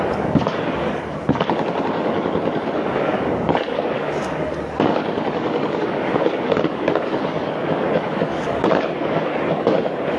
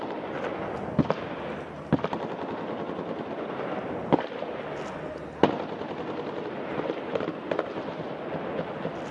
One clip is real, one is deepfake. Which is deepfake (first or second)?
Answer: first